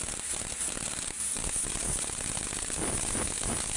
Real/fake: real